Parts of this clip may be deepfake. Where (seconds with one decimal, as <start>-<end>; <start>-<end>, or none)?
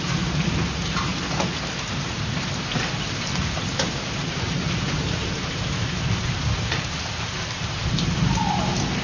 0.0-1.1; 2.8-9.0